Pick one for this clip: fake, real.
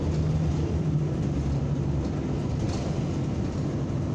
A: real